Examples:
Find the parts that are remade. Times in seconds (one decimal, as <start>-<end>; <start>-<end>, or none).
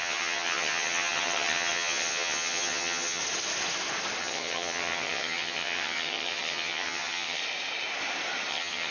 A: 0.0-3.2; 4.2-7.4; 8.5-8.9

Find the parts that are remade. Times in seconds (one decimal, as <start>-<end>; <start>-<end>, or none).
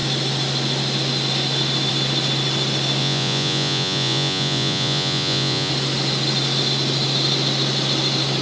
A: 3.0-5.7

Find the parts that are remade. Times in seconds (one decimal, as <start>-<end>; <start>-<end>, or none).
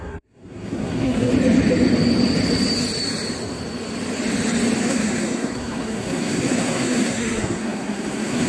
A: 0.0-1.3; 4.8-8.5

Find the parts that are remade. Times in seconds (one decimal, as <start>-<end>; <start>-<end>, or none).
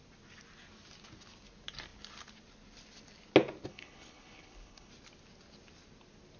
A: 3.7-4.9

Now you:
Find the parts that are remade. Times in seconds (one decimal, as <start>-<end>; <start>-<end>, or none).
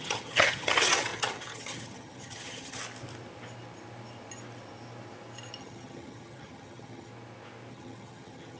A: 0.0-2.8; 5.6-7.1; 7.7-8.6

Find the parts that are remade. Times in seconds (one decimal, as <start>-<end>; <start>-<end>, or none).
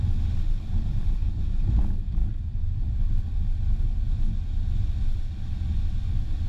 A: 2.2-3.1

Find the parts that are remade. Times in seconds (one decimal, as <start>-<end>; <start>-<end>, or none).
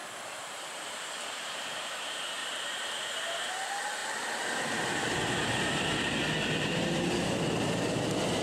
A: 0.0-1.8; 2.4-3.5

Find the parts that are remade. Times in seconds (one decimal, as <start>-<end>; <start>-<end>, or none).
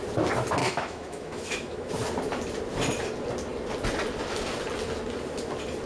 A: 0.6-1.9